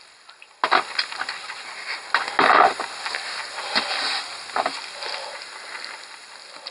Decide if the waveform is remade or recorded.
recorded